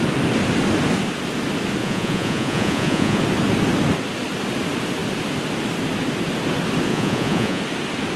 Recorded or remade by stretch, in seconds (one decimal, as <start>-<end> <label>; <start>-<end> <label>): 0.0-1.8 recorded; 1.8-3.2 remade; 3.2-6.9 recorded; 6.9-7.6 remade; 7.6-8.2 recorded